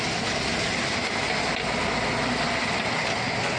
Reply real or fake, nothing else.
real